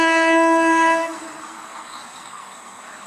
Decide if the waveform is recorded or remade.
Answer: remade